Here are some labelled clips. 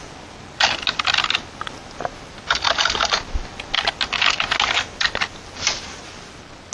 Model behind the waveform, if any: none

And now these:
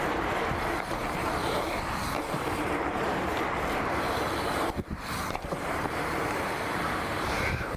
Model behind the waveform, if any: vocoder, BigVGAN v2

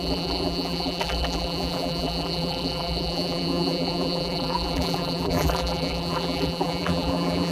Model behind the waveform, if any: vocoder, BigVGAN v2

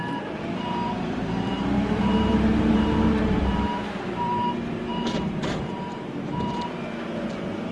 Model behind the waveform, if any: vocoder, BigVGAN v2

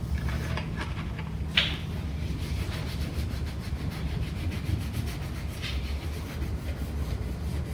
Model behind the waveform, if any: none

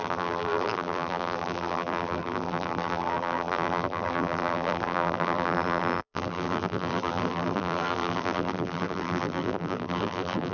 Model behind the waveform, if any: vocoder, BigVGAN v2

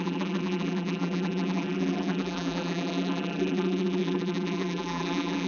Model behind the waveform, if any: vocoder, BigVGAN v2